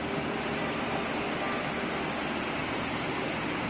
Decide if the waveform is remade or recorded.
recorded